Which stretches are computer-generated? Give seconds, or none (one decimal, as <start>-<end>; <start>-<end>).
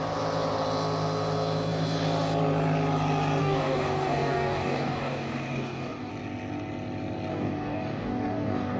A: 3.4-6.1; 7.3-8.8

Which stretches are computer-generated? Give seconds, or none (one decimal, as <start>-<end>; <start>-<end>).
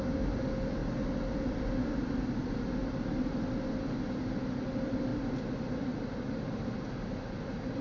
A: none